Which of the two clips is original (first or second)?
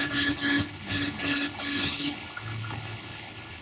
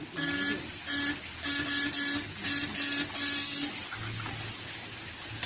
second